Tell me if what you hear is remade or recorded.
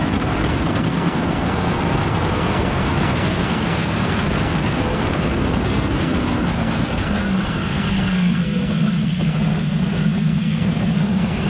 remade